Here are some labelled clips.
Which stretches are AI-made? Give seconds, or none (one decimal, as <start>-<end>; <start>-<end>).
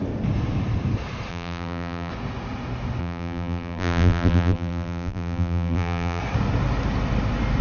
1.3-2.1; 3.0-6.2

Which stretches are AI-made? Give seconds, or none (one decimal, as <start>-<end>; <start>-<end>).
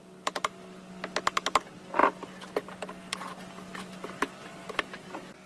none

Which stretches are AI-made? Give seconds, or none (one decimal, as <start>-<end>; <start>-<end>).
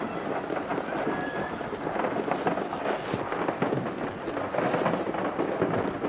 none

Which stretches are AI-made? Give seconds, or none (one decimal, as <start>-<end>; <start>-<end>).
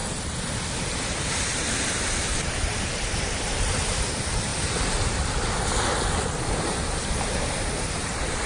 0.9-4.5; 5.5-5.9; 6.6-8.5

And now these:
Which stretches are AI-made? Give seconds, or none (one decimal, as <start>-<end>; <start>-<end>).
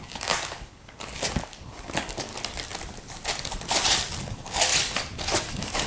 0.0-2.3; 4.2-4.7; 5.5-5.9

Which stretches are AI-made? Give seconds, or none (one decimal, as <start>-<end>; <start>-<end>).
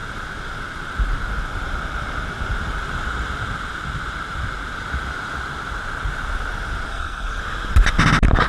6.9-7.4